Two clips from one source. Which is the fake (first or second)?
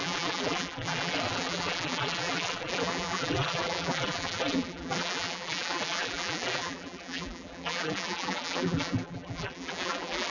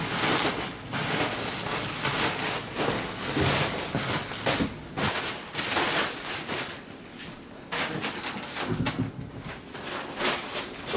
first